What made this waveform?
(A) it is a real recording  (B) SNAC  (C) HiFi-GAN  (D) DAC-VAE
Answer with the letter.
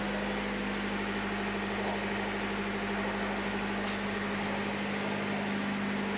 A